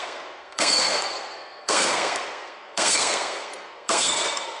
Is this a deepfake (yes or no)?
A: yes